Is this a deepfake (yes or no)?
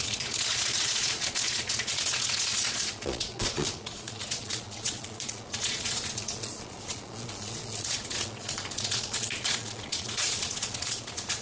yes